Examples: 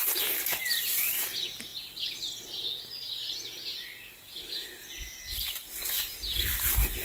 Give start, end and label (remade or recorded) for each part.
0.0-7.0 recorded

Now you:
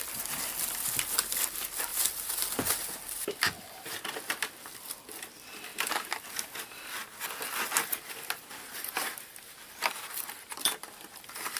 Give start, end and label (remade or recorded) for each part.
0.0-5.7 remade; 5.7-6.5 recorded; 6.5-11.6 remade

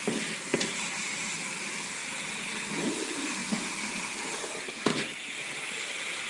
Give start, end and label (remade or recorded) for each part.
0.0-6.3 recorded

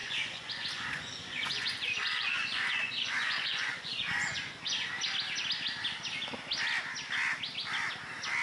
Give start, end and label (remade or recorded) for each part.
0.0-4.9 remade; 4.9-8.4 recorded

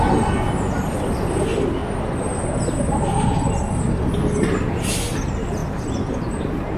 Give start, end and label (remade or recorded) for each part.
0.0-6.8 recorded

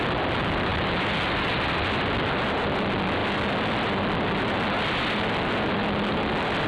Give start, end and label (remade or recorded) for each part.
0.0-6.7 recorded

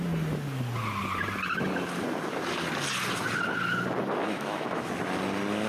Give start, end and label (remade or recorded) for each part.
0.0-4.2 recorded; 4.2-4.9 remade; 4.9-5.7 recorded